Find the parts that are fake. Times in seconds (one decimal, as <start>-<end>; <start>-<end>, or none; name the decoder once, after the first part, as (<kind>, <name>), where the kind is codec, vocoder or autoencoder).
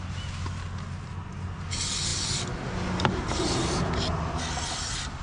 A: none